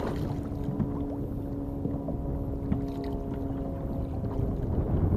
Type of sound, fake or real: real